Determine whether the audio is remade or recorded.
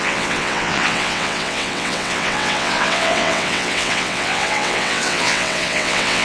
remade